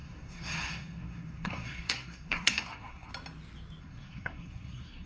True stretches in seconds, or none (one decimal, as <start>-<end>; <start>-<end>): 3.1-3.8